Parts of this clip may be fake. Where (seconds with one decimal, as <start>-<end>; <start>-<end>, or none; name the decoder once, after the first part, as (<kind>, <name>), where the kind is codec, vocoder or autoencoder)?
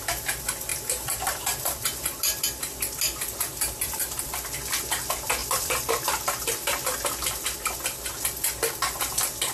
0.7-4.2 (vocoder, BigVGAN v2); 5.4-5.9